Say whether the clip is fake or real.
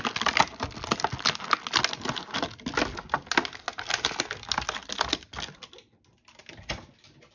real